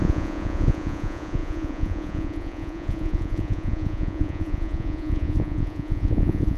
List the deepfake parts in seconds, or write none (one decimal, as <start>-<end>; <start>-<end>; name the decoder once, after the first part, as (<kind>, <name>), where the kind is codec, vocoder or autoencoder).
0.0-6.6 (vocoder, Vocos)